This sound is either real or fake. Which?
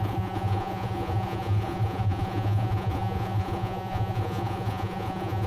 fake